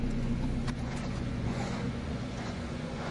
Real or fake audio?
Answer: fake